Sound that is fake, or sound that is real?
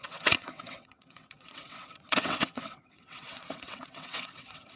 fake